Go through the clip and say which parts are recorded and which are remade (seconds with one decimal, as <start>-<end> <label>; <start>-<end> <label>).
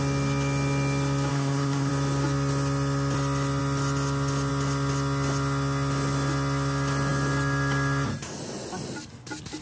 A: 0.0-1.3 recorded; 1.3-1.9 remade; 1.9-9.6 recorded